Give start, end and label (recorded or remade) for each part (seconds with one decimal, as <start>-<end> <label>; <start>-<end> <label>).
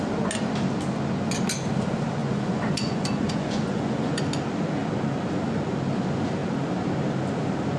0.0-2.2 recorded; 2.2-4.2 remade; 4.2-7.8 recorded